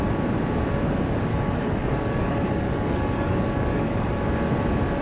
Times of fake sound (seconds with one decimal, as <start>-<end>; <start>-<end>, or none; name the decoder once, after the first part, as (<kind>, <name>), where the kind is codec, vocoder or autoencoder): 1.3-4.1 (codec, DAC)

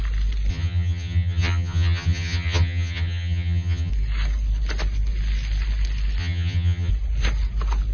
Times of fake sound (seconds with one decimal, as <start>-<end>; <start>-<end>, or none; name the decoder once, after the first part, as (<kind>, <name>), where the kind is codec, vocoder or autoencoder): 0.5-3.9 (vocoder, HiFi-GAN); 6.2-6.9

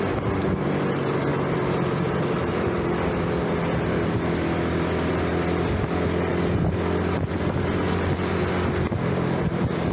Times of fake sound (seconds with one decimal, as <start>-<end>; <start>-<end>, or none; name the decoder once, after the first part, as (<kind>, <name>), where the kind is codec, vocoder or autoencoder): none

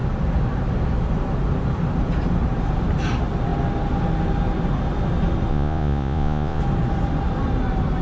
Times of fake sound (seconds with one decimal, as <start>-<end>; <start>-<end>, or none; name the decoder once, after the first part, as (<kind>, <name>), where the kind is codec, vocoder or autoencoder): 5.5-6.6 (vocoder, Vocos)

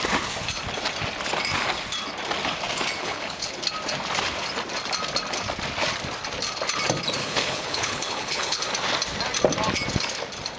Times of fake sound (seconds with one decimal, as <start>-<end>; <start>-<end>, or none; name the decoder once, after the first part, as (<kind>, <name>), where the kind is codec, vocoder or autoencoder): 3.0-3.6 (codec, HILCodec); 7.2-8.6